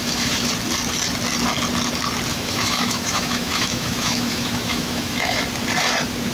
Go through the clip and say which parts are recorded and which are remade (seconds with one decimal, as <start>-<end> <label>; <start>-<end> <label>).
0.0-0.5 remade; 0.5-2.3 recorded; 2.3-5.4 remade; 5.4-6.3 recorded